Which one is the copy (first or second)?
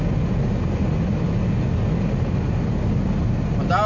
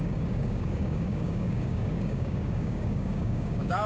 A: second